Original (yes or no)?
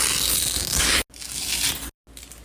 yes